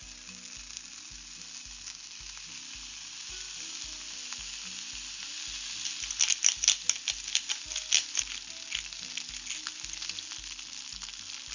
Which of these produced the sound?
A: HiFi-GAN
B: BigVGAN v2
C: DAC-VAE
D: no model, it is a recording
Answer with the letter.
D